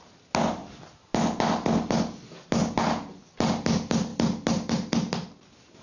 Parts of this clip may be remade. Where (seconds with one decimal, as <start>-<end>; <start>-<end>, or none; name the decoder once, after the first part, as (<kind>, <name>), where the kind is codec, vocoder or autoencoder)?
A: none

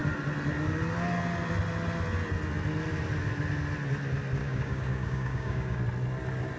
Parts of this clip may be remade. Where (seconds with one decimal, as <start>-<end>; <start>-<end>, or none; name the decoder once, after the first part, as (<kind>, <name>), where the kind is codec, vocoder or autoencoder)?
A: 4.4-5.8 (codec, DAC)

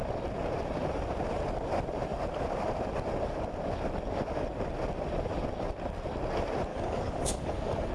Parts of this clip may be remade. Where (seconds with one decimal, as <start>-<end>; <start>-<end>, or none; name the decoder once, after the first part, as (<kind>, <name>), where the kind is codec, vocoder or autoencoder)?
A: 6.7-7.9 (codec, DAC)

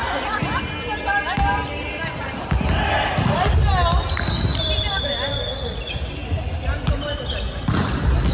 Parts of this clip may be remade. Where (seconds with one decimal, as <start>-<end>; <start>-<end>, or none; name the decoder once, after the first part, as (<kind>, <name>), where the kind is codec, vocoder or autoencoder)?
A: none

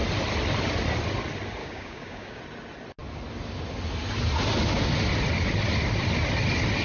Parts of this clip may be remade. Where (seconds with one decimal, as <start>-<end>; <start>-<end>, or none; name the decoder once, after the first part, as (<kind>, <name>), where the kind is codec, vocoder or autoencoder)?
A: 1.6-2.4 (codec, DAC)